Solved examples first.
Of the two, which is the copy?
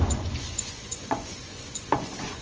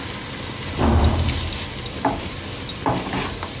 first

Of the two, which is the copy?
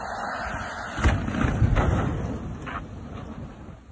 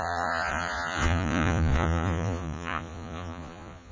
second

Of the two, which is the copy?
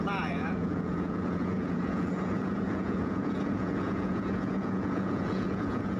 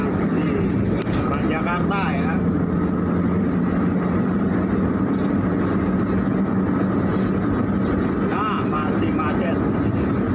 first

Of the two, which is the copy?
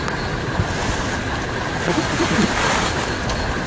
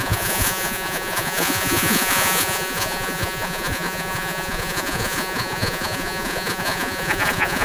second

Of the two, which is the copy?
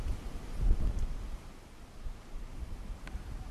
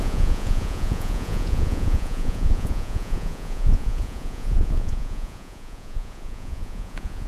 second